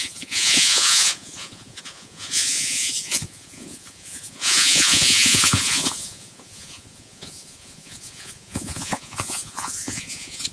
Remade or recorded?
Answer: remade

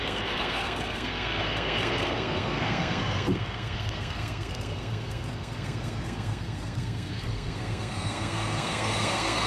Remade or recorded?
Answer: remade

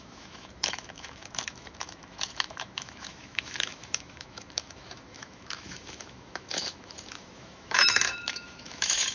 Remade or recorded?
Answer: remade